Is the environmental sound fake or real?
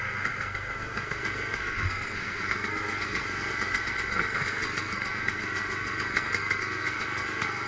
fake